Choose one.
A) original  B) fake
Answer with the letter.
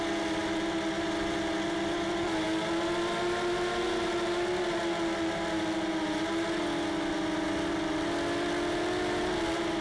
A